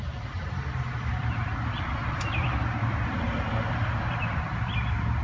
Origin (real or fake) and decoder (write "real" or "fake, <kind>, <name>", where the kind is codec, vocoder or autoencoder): fake, vocoder, BigVGAN v2